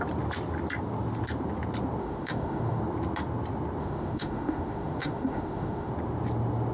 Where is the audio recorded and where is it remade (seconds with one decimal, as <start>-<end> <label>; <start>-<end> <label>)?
0.0-2.0 recorded; 2.0-2.8 remade; 2.8-3.8 recorded; 3.8-5.9 remade; 5.9-6.7 recorded

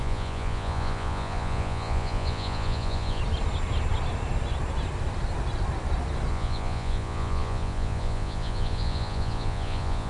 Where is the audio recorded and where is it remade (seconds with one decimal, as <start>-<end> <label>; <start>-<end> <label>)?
0.0-3.2 remade; 3.2-6.3 recorded; 6.3-10.1 remade

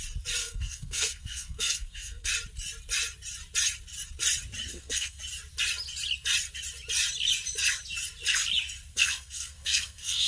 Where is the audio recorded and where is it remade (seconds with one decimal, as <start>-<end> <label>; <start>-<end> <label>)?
0.0-0.4 recorded; 0.4-2.3 remade; 2.3-4.7 recorded; 4.7-5.2 remade; 5.2-8.9 recorded; 8.9-10.3 remade

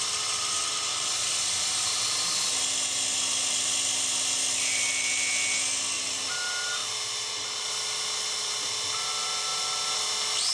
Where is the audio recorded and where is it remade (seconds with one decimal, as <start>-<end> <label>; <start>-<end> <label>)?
0.0-10.5 recorded

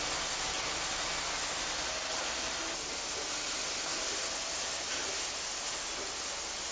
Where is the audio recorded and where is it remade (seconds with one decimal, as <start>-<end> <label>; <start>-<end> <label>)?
0.0-6.7 recorded

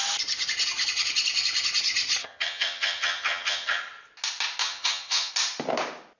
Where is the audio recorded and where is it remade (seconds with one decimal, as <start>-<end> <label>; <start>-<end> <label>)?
0.0-2.2 recorded; 2.2-3.8 remade; 3.8-4.6 recorded; 4.6-5.3 remade; 5.3-6.2 recorded

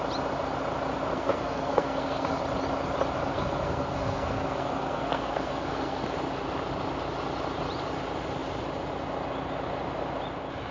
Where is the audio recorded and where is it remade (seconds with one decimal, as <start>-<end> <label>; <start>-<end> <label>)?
0.0-1.1 recorded; 1.1-2.4 remade; 2.4-3.3 recorded; 3.3-6.0 remade; 6.0-10.7 recorded

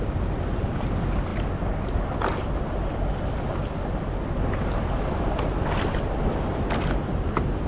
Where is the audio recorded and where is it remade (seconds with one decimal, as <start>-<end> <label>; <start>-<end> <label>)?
0.0-7.7 recorded